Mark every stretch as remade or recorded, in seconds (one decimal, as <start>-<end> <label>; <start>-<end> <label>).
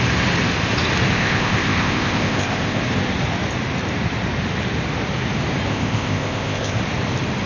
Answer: 0.0-1.1 recorded; 1.1-2.8 remade; 2.8-5.7 recorded; 5.7-6.8 remade; 6.8-7.5 recorded